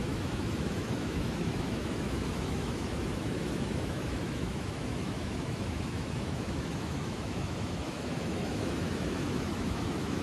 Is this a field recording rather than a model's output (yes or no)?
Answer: no